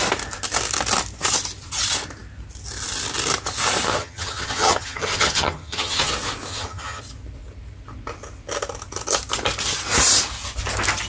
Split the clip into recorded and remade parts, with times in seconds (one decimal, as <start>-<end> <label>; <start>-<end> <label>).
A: 0.0-3.9 recorded; 3.9-6.1 remade; 6.1-6.5 recorded; 6.5-7.0 remade; 7.0-11.1 recorded